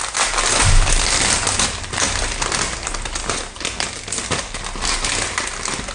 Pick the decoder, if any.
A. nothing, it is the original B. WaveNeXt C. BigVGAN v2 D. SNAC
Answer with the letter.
A